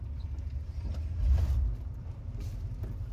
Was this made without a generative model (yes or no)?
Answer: no